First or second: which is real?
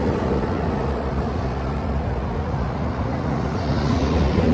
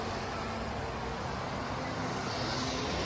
second